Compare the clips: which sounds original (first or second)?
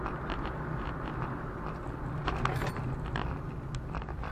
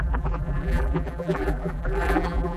first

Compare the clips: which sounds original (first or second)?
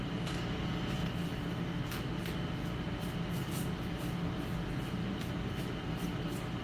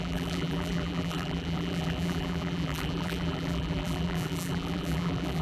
first